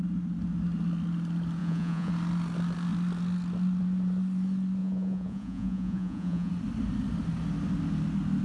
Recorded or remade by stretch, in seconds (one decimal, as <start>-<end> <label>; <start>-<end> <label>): 0.0-1.6 recorded; 1.6-2.1 remade; 2.1-4.8 recorded; 4.8-6.5 remade; 6.5-8.4 recorded

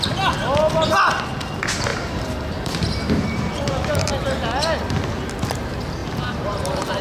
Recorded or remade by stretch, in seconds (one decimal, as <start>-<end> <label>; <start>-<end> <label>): 0.0-1.9 recorded; 1.9-4.8 remade; 4.8-6.0 recorded; 6.0-7.0 remade

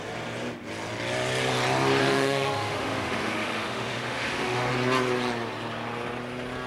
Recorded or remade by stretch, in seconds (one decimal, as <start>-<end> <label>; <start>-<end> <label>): 0.0-2.0 recorded; 2.0-4.7 remade; 4.7-6.7 recorded

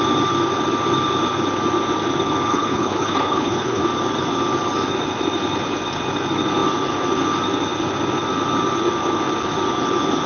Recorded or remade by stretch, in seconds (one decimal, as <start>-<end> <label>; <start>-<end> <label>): 0.0-2.5 recorded; 2.5-3.8 remade; 3.8-10.3 recorded

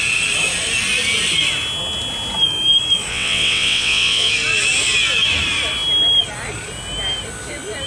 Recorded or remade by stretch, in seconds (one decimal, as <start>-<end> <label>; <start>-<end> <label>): 0.0-3.1 recorded; 3.1-4.3 remade; 4.3-7.9 recorded

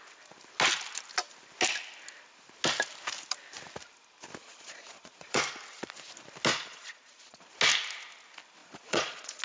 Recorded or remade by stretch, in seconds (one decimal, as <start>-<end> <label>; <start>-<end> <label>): 0.0-4.4 recorded; 4.4-5.4 remade; 5.4-6.5 recorded; 6.5-7.5 remade; 7.5-8.6 recorded; 8.6-9.4 remade

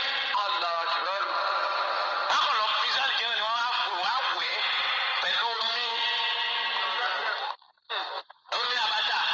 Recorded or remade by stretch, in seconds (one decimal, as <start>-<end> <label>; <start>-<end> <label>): 0.0-2.2 remade; 2.2-3.1 recorded; 3.1-5.9 remade; 5.9-8.2 recorded; 8.2-9.3 remade